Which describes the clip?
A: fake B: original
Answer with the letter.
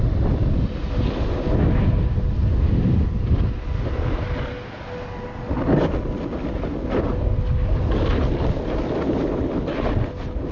B